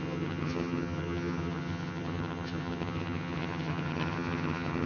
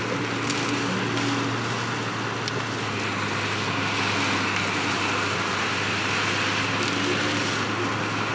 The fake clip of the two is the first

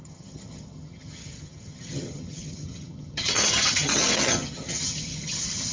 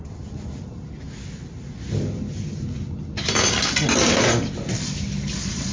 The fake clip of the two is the first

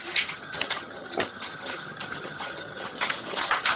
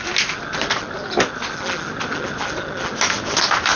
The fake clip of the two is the first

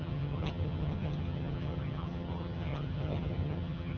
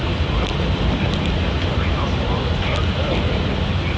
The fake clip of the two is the first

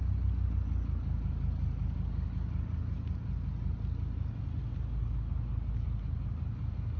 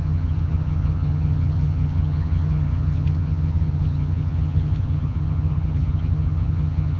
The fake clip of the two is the second